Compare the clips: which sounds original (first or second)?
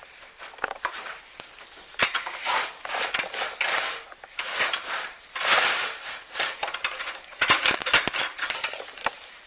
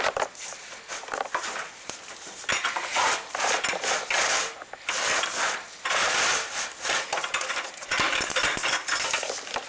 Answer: second